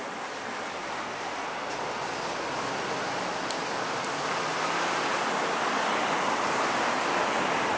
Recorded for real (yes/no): yes